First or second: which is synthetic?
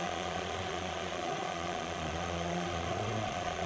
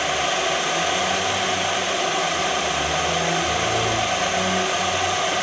first